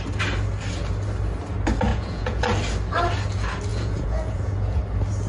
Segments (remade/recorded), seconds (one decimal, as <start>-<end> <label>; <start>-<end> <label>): 0.0-1.9 recorded; 1.9-2.4 remade; 2.4-3.7 recorded; 3.7-4.8 remade; 4.8-5.3 recorded